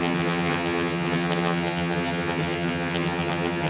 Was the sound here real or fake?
fake